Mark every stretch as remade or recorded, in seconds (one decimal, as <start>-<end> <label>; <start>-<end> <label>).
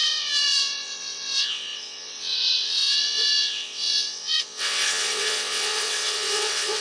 0.0-6.8 remade